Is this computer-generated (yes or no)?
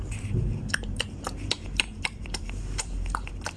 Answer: yes